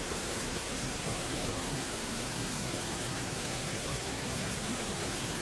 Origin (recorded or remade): remade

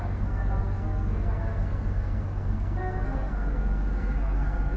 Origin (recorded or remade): remade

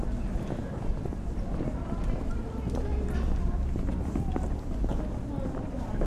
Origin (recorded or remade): recorded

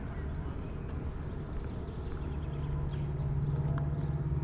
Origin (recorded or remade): recorded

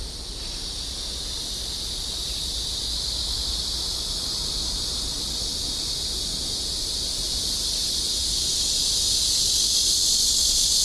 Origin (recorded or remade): recorded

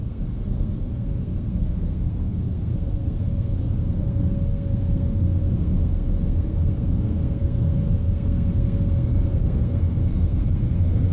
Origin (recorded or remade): remade